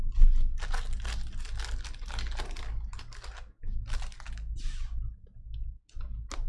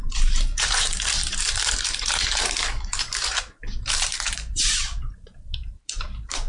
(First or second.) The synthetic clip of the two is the second